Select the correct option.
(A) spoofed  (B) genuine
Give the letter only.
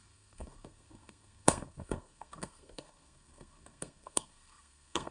A